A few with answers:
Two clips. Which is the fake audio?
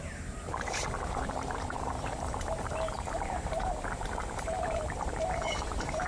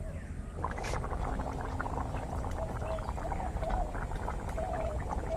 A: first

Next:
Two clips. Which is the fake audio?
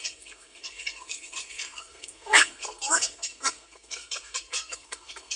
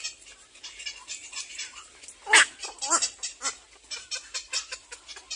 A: first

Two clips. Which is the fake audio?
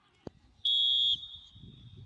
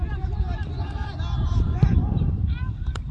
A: second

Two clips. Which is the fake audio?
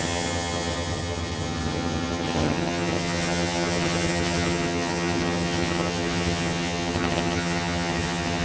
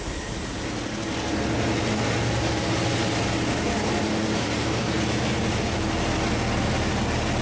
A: first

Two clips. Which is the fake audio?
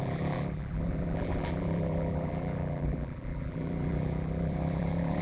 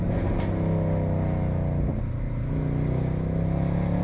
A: first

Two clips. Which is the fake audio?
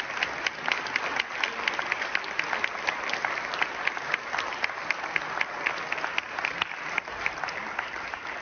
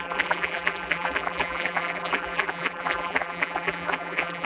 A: second